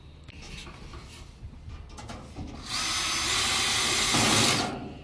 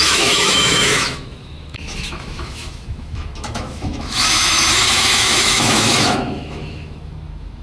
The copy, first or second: second